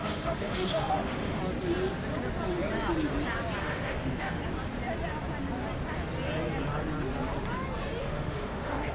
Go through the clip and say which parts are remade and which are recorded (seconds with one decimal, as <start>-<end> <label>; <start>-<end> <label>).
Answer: 0.0-1.4 remade; 1.4-3.6 recorded; 3.6-4.4 remade; 4.4-8.0 recorded; 8.0-8.9 remade